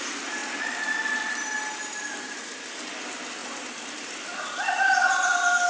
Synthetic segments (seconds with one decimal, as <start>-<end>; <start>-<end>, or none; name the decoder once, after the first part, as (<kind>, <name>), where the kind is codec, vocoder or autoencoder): none